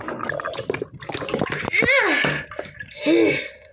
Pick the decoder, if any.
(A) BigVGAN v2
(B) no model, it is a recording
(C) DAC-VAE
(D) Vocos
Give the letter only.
B